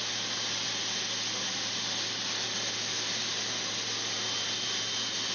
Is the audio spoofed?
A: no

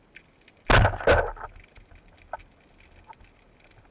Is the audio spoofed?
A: no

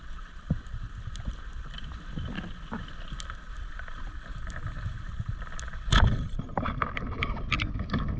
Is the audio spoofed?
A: no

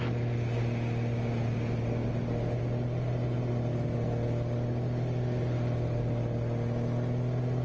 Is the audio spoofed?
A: no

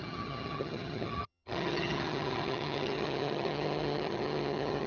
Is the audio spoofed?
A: yes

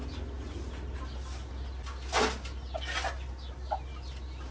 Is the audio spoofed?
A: no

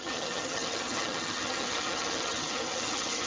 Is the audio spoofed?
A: yes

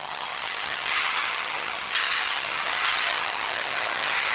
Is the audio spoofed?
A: yes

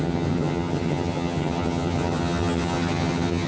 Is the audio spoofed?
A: yes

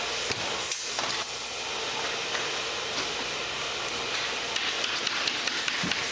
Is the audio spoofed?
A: no